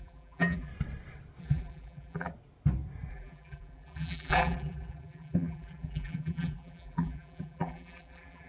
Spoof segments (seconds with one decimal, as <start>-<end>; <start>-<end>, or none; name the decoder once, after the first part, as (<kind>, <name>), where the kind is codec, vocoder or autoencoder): 0.0-0.7 (vocoder, BigVGAN v2); 1.4-2.3; 3.1-8.5